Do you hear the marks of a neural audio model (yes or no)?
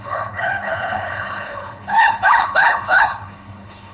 yes